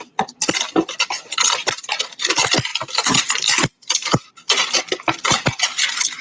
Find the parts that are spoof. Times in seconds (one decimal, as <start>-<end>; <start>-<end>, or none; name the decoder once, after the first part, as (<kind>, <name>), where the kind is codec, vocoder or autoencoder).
2.7-4.3 (vocoder, BigVGAN v2)